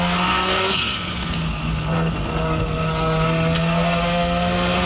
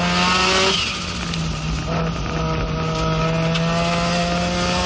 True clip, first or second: second